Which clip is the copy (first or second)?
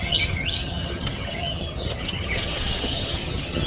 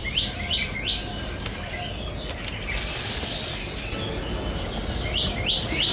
first